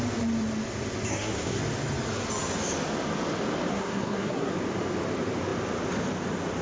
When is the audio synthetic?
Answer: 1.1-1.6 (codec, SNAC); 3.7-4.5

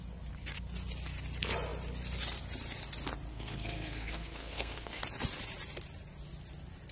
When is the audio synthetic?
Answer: 3.3-5.0 (codec, SNAC)

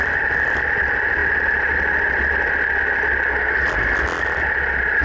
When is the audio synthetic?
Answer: none

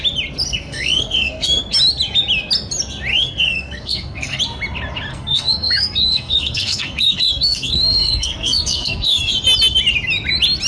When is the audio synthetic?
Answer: 0.5-1.6 (codec, SNAC); 3.1-4.4; 5.1-9.3

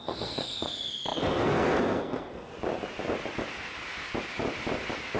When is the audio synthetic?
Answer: 0.0-2.5 (codec, SNAC)

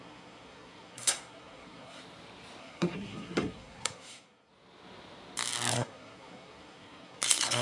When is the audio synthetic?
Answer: 0.0-2.0 (codec, SNAC); 2.6-4.5; 5.7-7.6

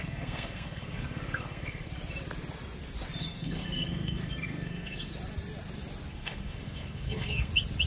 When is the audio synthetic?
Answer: 0.0-1.9 (codec, SNAC); 3.2-5.1; 6.1-7.5

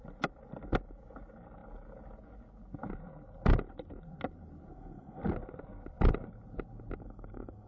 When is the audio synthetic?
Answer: 4.7-5.2 (codec, SNAC); 7.0-7.7